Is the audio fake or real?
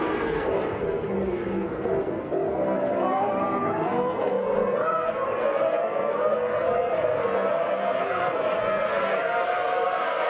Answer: fake